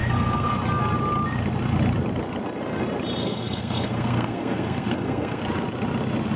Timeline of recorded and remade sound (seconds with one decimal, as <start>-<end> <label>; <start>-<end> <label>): 0.0-0.5 remade; 0.5-3.2 recorded; 3.2-5.4 remade; 5.4-6.4 recorded